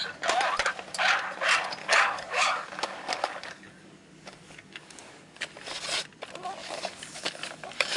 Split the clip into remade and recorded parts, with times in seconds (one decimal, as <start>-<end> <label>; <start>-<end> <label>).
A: 0.0-1.8 recorded; 1.8-5.4 remade; 5.4-6.6 recorded; 6.6-8.0 remade